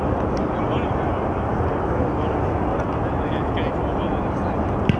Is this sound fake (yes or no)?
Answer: no